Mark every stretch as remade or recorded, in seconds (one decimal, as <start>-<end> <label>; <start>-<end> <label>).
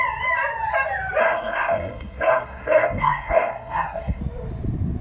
0.0-1.2 recorded; 1.2-4.2 remade; 4.2-5.0 recorded